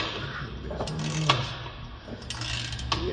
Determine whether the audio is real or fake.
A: real